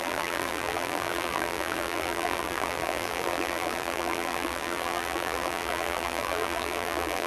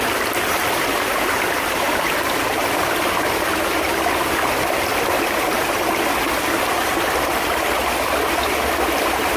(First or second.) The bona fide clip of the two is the second